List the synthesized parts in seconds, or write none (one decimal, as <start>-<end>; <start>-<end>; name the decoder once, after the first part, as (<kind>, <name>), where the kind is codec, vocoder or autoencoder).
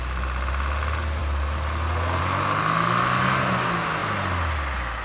none